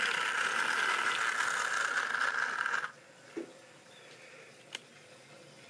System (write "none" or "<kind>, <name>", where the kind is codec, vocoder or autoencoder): none